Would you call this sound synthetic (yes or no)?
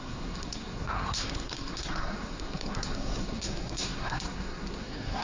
yes